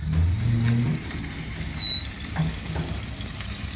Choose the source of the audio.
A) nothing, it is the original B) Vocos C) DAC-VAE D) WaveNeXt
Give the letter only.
A